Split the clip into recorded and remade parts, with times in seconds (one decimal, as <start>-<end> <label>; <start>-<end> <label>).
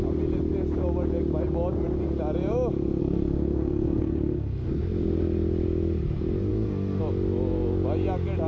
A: 0.0-3.0 recorded; 3.0-4.7 remade; 4.7-6.5 recorded; 6.5-7.0 remade; 7.0-8.5 recorded